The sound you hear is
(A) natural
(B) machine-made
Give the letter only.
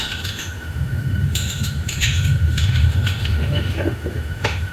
B